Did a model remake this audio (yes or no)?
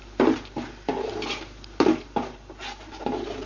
no